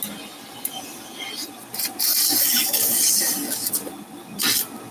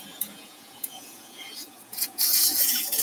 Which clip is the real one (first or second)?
first